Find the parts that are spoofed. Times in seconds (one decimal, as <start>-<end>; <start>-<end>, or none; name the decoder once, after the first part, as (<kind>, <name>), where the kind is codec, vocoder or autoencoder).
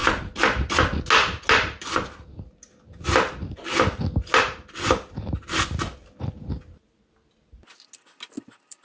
none